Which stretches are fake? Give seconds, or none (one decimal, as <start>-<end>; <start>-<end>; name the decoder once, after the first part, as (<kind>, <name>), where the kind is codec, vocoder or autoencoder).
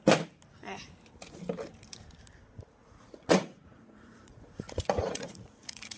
2.8-6.0 (vocoder, Vocos)